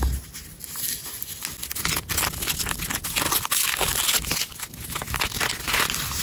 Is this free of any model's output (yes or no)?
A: yes